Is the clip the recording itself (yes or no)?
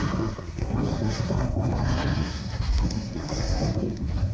no